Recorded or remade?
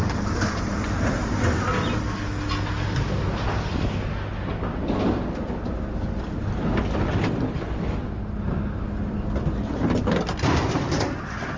recorded